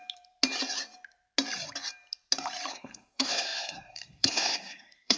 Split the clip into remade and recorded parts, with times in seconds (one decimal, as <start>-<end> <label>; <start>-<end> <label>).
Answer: 0.0-2.7 recorded; 2.7-5.2 remade